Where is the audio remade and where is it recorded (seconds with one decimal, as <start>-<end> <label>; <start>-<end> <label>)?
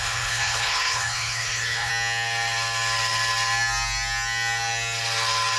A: 0.0-1.9 remade; 1.9-5.6 recorded